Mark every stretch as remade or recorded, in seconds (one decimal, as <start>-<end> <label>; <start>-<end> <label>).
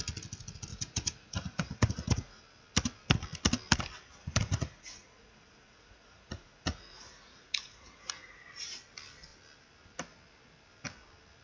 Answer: 0.0-0.7 recorded; 0.7-2.4 remade; 2.4-4.2 recorded; 4.2-8.4 remade; 8.4-11.4 recorded